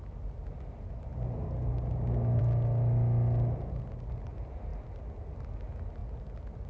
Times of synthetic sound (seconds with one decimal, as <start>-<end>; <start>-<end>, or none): none